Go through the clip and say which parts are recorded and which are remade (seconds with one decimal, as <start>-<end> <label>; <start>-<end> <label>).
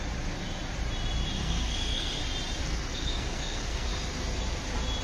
0.0-1.4 recorded; 1.4-2.2 remade; 2.2-2.6 recorded; 2.6-3.9 remade; 3.9-5.0 recorded